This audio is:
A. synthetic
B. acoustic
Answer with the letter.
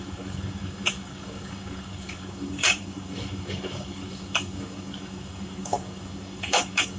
A